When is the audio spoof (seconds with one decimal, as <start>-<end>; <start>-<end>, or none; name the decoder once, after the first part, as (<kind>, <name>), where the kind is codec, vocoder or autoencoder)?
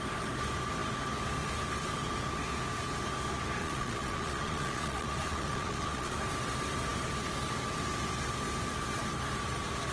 3.6-6.2 (vocoder, Vocos)